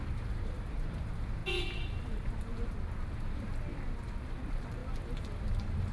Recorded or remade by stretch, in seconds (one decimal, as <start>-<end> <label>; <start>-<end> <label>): 0.0-1.4 remade; 1.4-1.9 recorded; 1.9-2.5 remade; 2.5-4.2 recorded; 4.2-5.9 remade